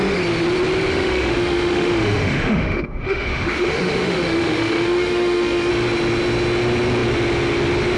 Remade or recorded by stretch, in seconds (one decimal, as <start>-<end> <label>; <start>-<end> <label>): 0.0-0.9 recorded; 0.9-5.7 remade; 5.7-8.0 recorded